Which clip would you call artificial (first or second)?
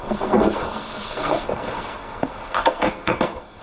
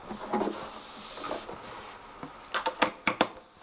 first